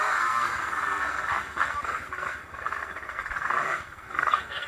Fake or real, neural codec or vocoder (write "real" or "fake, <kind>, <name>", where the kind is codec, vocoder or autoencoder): fake, codec, SNAC